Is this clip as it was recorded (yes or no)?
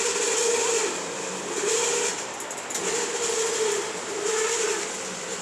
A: yes